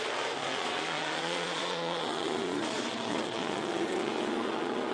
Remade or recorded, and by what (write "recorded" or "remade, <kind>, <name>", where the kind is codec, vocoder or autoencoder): remade, vocoder, Vocos